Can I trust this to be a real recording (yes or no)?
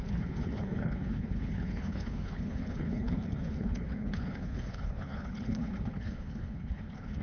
no